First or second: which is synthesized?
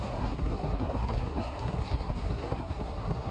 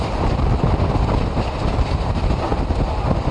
first